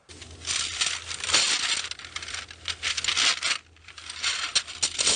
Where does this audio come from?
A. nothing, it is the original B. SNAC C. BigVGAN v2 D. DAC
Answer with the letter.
A